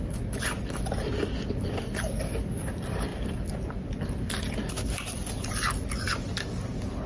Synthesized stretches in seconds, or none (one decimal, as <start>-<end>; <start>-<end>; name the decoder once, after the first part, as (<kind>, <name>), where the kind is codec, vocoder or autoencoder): none